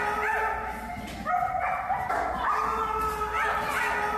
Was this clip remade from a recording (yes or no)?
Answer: no